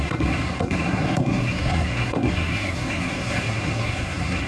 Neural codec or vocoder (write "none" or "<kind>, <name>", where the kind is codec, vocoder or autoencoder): codec, SNAC